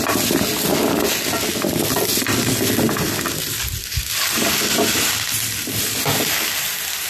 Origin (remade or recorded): recorded